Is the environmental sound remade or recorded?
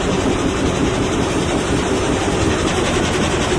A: remade